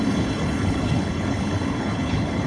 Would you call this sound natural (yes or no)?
no